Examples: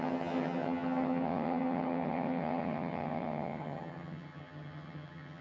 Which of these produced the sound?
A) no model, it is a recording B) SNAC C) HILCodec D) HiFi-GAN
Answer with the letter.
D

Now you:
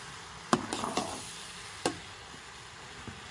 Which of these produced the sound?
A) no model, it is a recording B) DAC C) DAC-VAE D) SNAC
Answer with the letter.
A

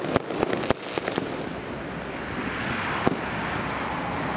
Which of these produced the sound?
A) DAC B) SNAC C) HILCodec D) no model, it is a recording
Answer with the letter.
D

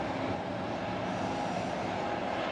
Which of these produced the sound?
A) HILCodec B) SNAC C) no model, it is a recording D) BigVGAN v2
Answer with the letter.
C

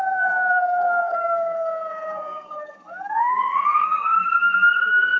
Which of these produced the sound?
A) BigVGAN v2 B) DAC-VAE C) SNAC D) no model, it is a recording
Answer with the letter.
C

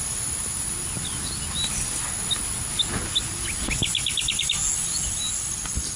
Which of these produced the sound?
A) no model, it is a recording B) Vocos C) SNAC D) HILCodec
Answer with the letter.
A